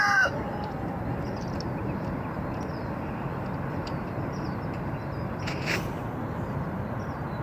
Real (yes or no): yes